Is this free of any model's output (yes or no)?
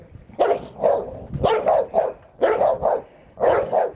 yes